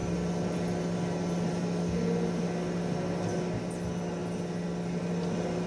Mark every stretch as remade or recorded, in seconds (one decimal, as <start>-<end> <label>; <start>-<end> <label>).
0.0-5.7 recorded